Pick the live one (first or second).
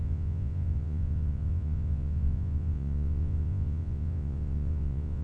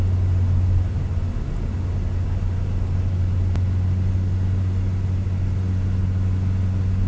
second